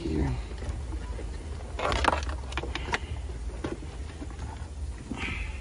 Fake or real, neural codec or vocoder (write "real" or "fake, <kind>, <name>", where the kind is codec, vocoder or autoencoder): real